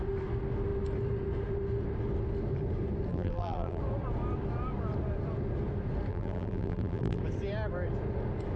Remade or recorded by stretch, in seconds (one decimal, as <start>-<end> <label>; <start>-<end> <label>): 0.0-3.1 recorded; 3.1-3.8 remade; 3.8-6.1 recorded; 6.1-7.2 remade; 7.2-8.6 recorded